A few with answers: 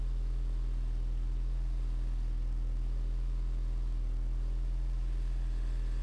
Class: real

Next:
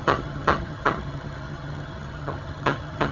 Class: fake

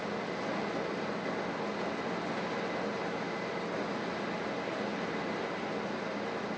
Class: real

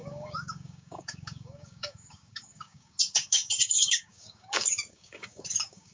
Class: fake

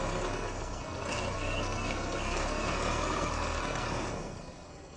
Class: fake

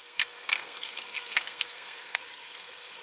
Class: fake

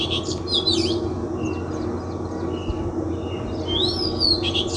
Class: real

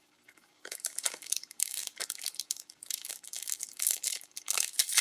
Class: fake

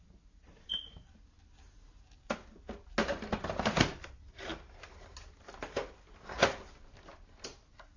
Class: real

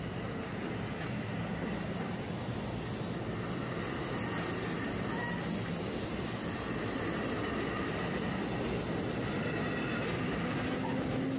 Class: real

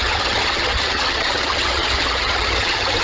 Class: fake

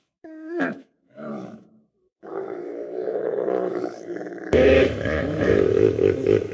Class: fake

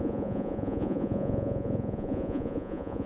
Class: fake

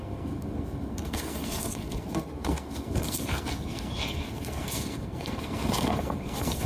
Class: fake